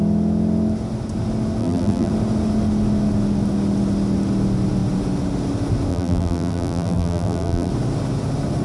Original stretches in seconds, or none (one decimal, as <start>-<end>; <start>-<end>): 0.0-1.6; 2.1-5.9; 7.7-8.6